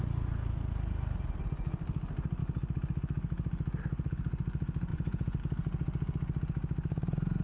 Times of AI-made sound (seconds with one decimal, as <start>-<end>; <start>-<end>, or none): 4.9-5.4